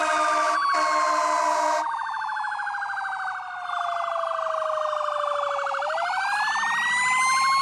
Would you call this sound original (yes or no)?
yes